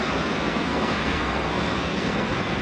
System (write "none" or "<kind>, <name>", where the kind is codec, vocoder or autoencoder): codec, SNAC